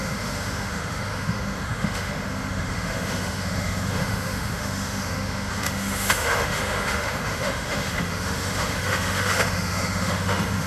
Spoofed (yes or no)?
yes